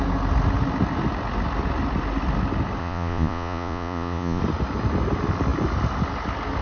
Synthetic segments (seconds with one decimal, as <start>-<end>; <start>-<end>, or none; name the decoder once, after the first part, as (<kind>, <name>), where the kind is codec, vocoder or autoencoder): 2.8-4.4 (vocoder, Vocos)